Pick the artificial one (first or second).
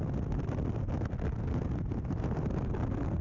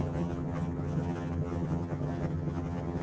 second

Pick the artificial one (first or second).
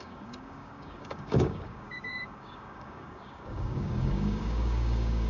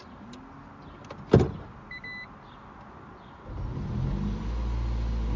first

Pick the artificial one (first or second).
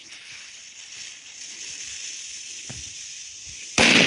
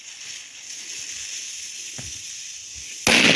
first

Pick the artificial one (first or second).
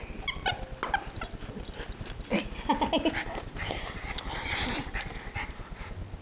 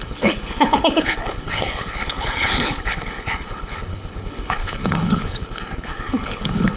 second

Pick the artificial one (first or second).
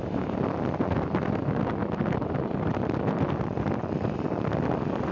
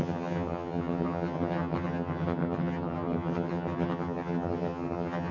second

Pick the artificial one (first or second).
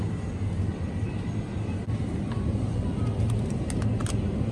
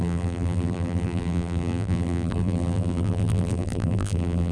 second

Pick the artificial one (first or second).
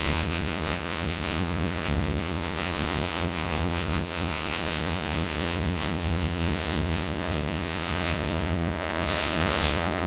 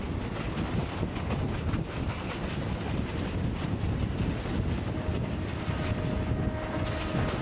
first